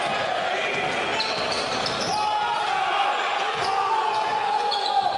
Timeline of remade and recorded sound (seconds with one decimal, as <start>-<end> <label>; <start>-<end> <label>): 0.0-1.1 remade; 1.1-3.1 recorded; 3.1-5.2 remade